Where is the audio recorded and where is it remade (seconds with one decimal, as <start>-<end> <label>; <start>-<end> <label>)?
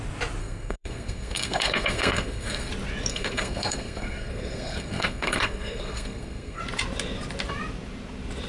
0.0-0.4 recorded; 0.4-2.7 remade; 2.7-3.1 recorded; 3.1-6.6 remade; 6.6-8.5 recorded